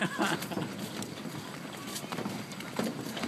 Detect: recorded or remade recorded